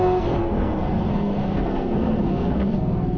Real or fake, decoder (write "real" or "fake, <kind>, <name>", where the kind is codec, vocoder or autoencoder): fake, codec, SNAC